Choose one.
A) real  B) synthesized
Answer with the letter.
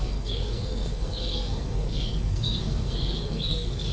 B